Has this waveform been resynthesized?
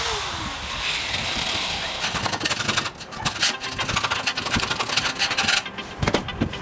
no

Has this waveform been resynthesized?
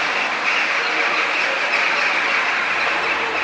no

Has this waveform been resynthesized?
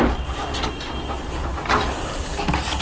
no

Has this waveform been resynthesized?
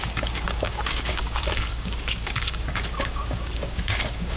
yes